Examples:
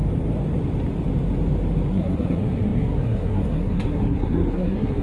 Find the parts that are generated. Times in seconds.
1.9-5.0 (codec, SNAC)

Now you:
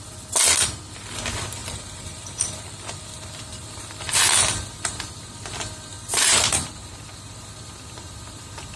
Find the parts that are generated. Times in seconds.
1.6-4.2 (vocoder, BigVGAN v2); 5.9-6.9

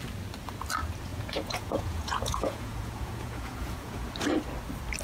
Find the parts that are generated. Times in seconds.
1.1-4.1 (vocoder, Vocos)

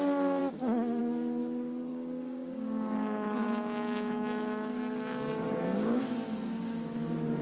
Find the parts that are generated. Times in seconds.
0.4-1.0 (codec, DAC); 1.9-6.0

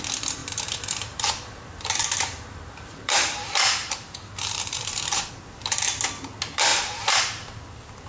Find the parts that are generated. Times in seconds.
0.4-5.3 (vocoder, BigVGAN v2); 6.7-7.2

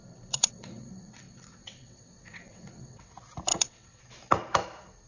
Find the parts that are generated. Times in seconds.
0.0-3.1 (vocoder, WaveNeXt); 3.5-4.0